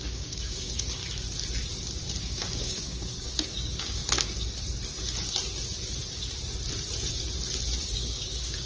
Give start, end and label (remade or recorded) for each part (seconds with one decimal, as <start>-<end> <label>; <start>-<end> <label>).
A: 0.0-1.0 remade; 1.0-2.2 recorded; 2.2-4.0 remade; 4.0-7.8 recorded; 7.8-8.7 remade